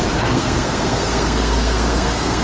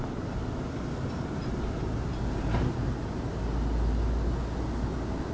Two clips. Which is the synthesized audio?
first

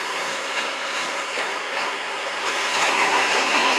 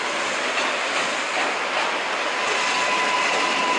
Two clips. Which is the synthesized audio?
first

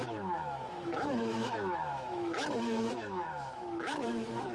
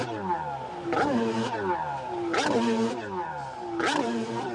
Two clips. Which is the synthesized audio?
first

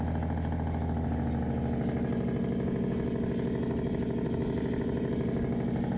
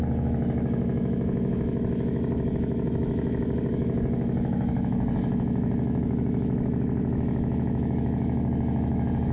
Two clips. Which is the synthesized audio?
second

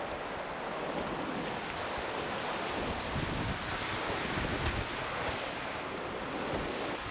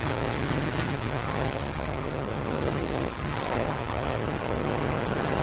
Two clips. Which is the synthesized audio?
second